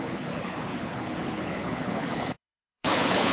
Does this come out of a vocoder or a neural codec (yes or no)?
yes